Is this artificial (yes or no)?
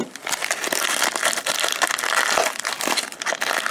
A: no